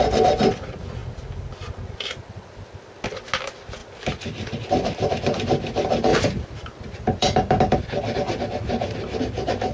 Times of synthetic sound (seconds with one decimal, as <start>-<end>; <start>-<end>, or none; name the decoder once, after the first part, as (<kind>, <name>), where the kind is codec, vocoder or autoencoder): 6.1-7.6 (vocoder, BigVGAN v2)